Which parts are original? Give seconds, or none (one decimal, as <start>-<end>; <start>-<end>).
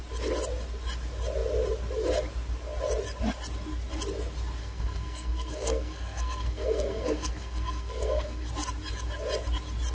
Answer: 0.0-4.6; 8.5-9.9